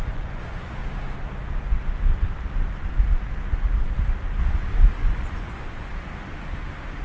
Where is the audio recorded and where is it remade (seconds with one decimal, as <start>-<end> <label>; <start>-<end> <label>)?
0.0-0.8 remade; 0.8-5.0 recorded; 5.0-5.9 remade; 5.9-7.0 recorded